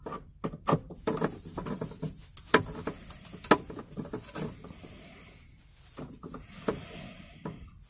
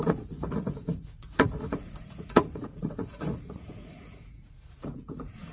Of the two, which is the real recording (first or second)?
first